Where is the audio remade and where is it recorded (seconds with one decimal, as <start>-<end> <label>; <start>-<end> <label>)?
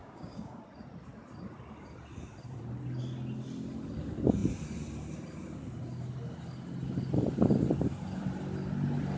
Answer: 0.0-0.6 remade; 0.6-9.2 recorded